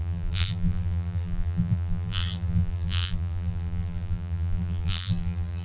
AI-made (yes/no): yes